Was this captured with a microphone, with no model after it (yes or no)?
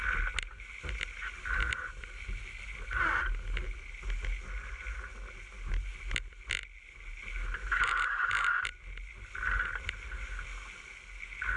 yes